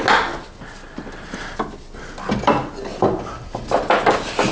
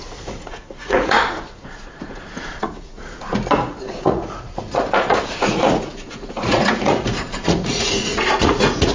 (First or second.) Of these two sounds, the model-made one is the second